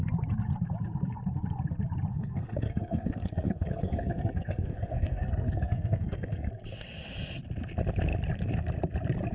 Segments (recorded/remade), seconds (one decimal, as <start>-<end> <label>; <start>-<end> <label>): 0.0-2.1 recorded; 2.1-6.5 remade; 6.5-9.3 recorded